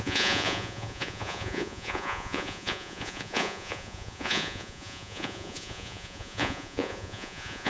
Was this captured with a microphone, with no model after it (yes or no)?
no